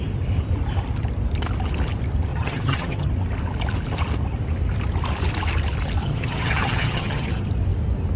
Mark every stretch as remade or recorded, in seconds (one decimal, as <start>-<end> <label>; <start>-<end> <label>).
0.0-2.3 recorded; 2.3-3.1 remade; 3.1-6.0 recorded; 6.0-7.5 remade; 7.5-8.2 recorded